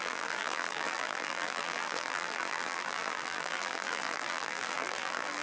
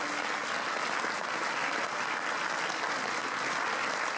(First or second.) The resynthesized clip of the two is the first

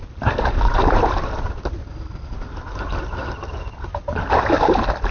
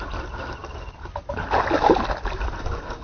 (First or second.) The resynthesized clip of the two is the first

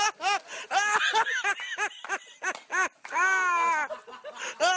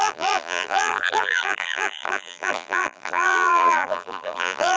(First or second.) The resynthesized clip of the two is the second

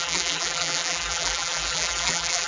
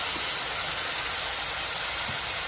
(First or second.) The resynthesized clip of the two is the first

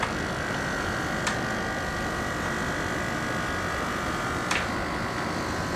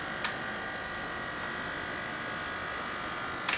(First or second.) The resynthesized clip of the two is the first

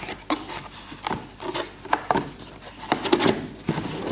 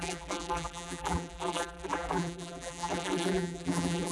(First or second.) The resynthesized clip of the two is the second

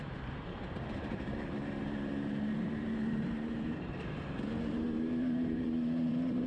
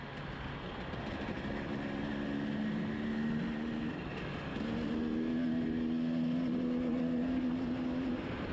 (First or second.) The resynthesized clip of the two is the first